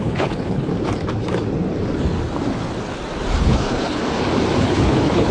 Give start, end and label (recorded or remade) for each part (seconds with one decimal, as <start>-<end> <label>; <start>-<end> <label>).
0.0-0.7 remade; 0.7-3.4 recorded; 3.4-4.0 remade; 4.0-4.6 recorded; 4.6-5.3 remade